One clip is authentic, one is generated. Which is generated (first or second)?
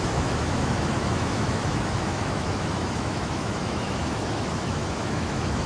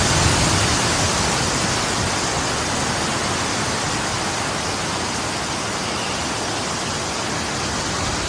first